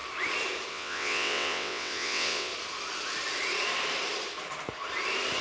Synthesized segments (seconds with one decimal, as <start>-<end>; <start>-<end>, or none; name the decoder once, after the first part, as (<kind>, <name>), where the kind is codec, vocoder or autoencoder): 0.7-2.5 (vocoder, WaveNeXt)